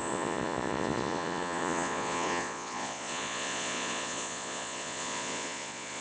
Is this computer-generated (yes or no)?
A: yes